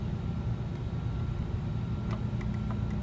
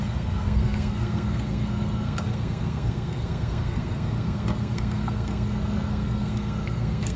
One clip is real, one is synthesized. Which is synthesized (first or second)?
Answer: second